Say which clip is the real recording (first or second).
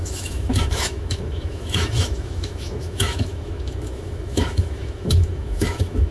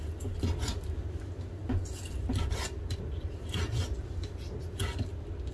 second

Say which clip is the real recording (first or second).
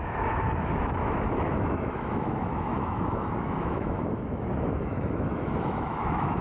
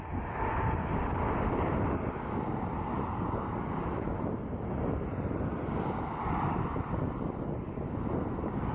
second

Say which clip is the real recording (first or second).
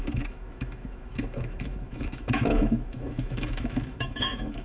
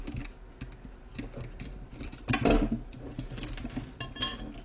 second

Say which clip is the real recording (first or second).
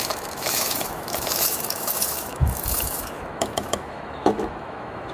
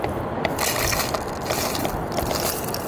second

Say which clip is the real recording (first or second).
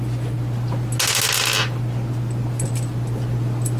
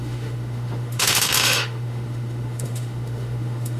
first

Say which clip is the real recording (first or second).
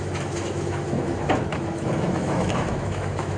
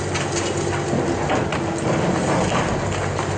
second